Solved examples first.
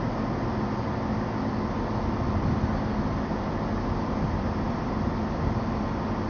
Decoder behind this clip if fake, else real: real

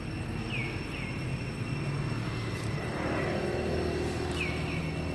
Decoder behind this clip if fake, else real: real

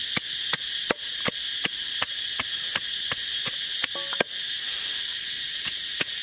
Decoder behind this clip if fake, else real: real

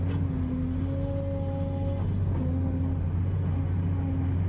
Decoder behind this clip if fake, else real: real